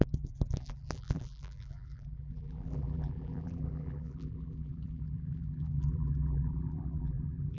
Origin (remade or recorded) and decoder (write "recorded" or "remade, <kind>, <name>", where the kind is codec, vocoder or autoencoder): remade, vocoder, BigVGAN v2